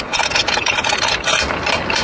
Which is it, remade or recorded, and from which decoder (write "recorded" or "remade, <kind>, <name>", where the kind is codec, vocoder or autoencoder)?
recorded